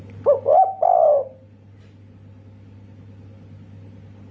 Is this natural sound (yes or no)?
yes